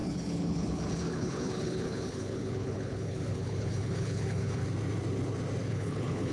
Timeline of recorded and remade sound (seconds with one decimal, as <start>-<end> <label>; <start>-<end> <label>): 0.0-4.6 remade; 4.6-5.7 recorded; 5.7-6.3 remade

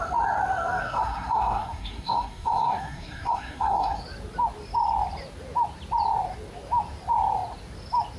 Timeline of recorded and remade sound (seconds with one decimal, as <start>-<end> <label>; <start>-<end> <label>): 0.0-0.8 recorded; 0.8-4.0 remade; 4.0-8.2 recorded

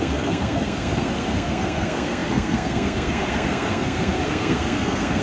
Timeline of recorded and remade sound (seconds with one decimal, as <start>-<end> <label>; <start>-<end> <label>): 0.0-5.2 remade

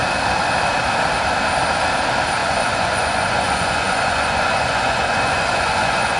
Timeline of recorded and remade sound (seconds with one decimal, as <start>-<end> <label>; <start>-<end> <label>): 0.0-2.4 recorded; 2.4-6.2 remade

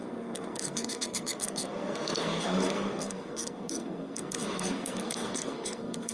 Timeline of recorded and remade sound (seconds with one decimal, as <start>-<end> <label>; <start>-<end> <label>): 0.0-6.1 remade

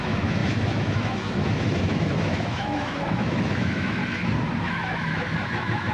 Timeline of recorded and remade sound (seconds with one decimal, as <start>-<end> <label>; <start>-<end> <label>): 0.0-4.0 remade; 4.0-4.6 recorded; 4.6-5.9 remade

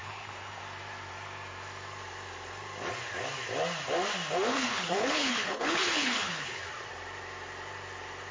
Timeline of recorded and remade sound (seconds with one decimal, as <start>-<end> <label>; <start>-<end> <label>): 0.0-0.6 remade; 0.6-4.5 recorded; 4.5-6.6 remade; 6.6-8.3 recorded